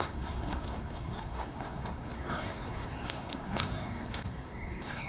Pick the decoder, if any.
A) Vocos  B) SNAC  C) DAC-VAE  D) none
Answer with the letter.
B